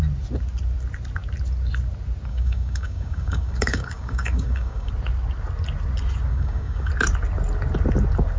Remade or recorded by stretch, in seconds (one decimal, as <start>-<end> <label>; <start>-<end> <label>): 0.0-2.3 recorded; 2.3-4.9 remade; 4.9-6.3 recorded; 6.3-6.9 remade; 6.9-8.4 recorded

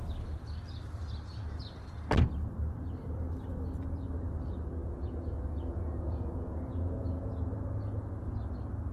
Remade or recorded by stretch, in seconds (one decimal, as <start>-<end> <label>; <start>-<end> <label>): 0.0-4.8 recorded; 4.8-7.3 remade; 7.3-8.9 recorded

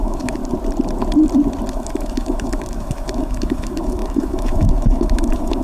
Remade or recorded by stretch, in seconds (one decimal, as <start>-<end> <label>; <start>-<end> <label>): 0.0-0.4 remade; 0.4-1.7 recorded; 1.7-5.6 remade

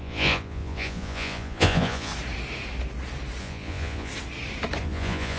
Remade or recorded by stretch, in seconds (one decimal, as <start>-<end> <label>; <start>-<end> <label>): 0.0-2.1 remade; 2.1-3.4 recorded; 3.4-4.1 remade; 4.1-4.8 recorded; 4.8-5.4 remade

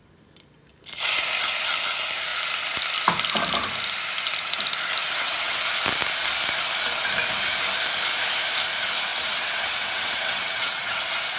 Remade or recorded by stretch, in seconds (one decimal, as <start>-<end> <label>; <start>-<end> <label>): 0.0-5.0 recorded; 5.0-5.6 remade; 5.6-9.1 recorded; 9.1-11.0 remade; 11.0-11.4 recorded